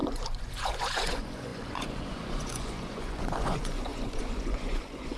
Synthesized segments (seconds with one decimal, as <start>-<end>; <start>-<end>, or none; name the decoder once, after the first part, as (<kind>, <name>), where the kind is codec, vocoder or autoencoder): 0.0-5.2 (vocoder, Vocos)